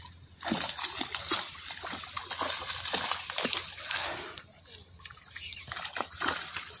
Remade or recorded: recorded